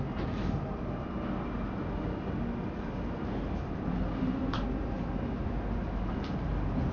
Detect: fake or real real